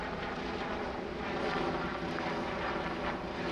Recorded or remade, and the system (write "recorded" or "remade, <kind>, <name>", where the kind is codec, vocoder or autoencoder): remade, vocoder, BigVGAN v2